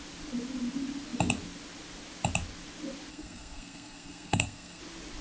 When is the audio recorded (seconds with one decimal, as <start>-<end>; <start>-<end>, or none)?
0.0-3.1; 4.8-5.2